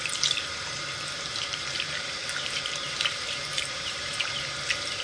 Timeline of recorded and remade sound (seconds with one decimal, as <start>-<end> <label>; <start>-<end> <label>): 0.0-5.0 remade